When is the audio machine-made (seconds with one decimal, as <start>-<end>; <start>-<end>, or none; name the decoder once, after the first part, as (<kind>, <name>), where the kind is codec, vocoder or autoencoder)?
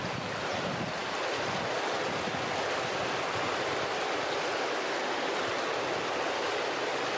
none